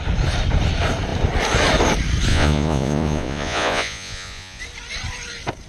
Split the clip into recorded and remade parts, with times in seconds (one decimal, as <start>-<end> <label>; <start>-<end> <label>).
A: 0.0-2.3 recorded; 2.3-4.6 remade; 4.6-5.7 recorded